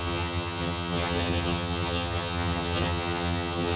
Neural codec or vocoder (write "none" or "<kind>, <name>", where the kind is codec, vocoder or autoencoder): vocoder, HiFi-GAN